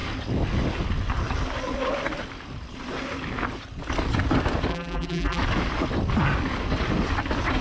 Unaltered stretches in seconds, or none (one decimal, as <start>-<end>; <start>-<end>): 0.0-4.7; 5.4-7.6